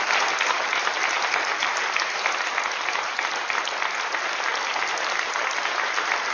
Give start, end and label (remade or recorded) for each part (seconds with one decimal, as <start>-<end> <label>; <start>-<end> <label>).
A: 0.0-6.3 recorded